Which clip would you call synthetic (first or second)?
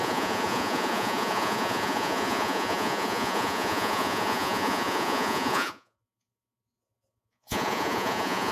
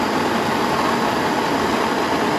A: first